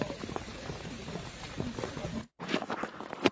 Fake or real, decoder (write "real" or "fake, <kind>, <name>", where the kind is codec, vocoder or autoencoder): fake, vocoder, Vocos